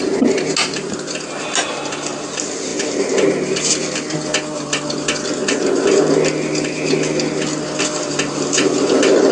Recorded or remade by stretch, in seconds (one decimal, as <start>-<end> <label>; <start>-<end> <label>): 0.0-9.3 recorded